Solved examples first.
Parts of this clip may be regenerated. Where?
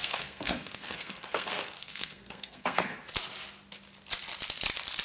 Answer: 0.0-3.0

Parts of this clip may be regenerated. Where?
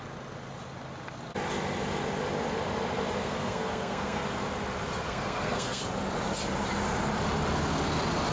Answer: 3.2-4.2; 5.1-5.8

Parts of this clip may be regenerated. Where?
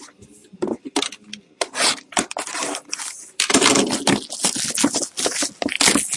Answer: none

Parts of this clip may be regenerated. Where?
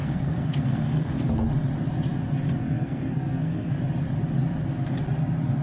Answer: 0.0-1.3; 2.6-3.8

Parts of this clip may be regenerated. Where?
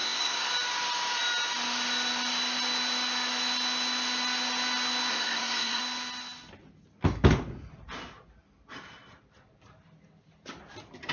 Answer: 0.0-0.5; 5.1-5.8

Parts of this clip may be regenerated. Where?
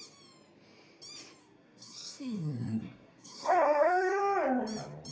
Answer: 1.4-4.2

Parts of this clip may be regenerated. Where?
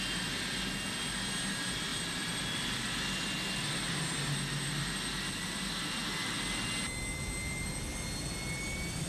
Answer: none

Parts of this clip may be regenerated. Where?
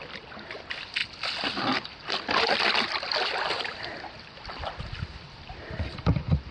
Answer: none